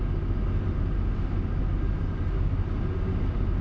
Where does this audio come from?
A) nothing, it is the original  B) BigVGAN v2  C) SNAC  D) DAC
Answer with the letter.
A